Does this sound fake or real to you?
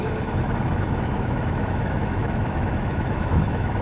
fake